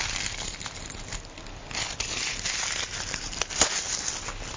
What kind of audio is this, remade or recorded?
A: recorded